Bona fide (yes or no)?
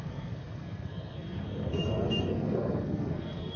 no